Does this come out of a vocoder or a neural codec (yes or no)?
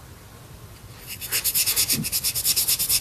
no